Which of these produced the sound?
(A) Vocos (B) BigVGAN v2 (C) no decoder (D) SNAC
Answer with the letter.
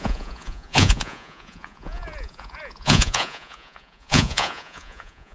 A